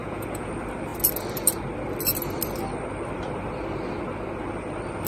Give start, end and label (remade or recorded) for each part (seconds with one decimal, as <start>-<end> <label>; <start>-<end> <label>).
0.0-0.5 remade; 0.5-5.1 recorded